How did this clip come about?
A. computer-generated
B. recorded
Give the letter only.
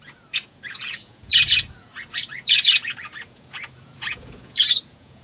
A